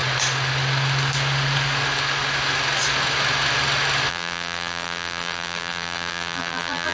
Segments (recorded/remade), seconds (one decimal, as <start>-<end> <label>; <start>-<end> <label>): 0.0-4.1 recorded; 4.1-6.9 remade